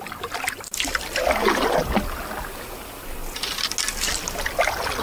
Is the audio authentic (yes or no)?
yes